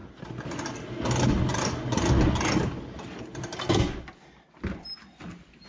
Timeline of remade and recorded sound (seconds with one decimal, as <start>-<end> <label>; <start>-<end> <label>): 0.0-5.7 recorded